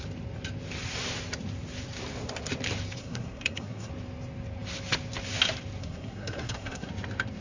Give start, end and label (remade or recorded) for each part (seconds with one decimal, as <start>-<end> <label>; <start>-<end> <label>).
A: 0.0-3.0 recorded; 3.0-3.9 remade; 3.9-5.8 recorded; 5.8-6.9 remade; 6.9-7.4 recorded